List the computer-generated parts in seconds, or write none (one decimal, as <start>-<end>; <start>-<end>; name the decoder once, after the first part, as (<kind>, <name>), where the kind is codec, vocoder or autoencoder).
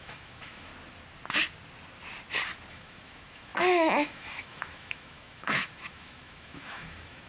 0.0-0.7 (autoencoder, DAC-VAE); 2.7-7.3